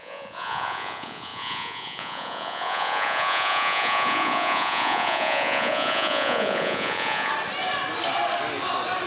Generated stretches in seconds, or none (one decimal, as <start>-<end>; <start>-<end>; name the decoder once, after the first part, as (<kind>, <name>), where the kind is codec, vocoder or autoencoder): 0.0-7.3 (vocoder, Vocos)